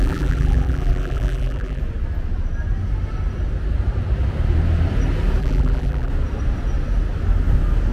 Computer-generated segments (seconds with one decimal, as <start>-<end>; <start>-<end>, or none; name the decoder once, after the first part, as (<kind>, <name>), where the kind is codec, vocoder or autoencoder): 0.0-1.8 (vocoder, BigVGAN v2); 5.4-6.1